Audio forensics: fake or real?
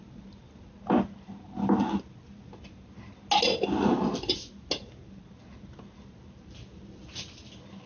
real